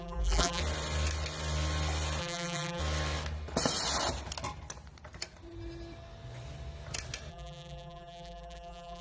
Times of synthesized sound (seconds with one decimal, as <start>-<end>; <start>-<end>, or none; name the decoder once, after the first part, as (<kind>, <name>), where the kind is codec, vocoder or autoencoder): 0.0-0.6 (vocoder, BigVGAN v2); 2.2-2.8; 7.3-9.0